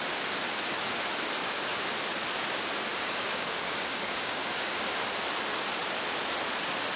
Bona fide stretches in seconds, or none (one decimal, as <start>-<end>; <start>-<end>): 0.0-1.4; 1.9-2.9; 4.7-7.0